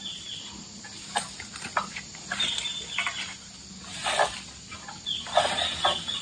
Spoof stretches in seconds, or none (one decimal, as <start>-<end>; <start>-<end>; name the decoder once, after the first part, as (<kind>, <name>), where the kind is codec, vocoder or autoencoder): none